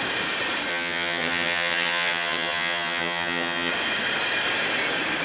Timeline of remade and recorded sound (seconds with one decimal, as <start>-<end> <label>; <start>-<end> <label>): 0.0-0.7 recorded; 0.7-3.7 remade; 3.7-5.2 recorded